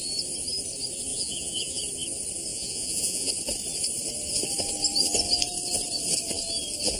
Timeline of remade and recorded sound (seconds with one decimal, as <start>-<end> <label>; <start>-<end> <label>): 0.0-1.1 recorded; 1.1-1.8 remade; 1.8-2.5 recorded; 2.5-3.3 remade; 3.3-7.0 recorded